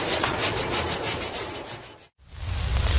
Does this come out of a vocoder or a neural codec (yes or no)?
no